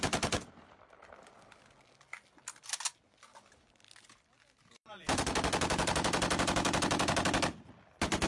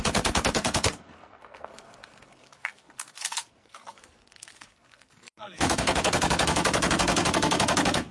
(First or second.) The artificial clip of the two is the second